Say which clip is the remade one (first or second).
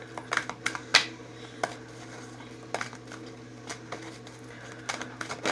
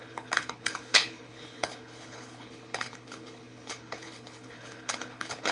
second